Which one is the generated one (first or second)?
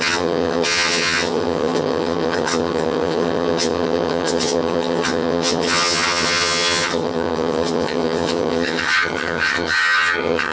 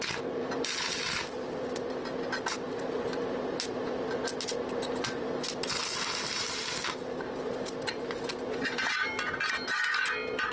first